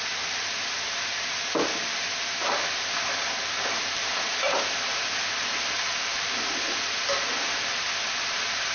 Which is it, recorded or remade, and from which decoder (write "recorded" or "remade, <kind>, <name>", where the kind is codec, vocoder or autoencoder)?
remade, vocoder, BigVGAN v2